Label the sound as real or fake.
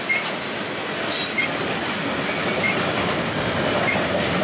real